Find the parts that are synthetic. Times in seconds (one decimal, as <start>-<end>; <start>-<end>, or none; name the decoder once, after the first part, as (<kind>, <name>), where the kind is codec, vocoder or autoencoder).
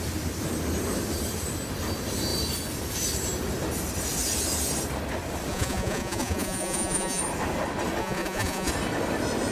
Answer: 5.5-7.2 (vocoder, Vocos); 8.0-8.7